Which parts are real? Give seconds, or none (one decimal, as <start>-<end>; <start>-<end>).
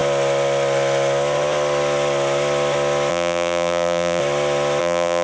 0.0-3.1; 4.2-4.8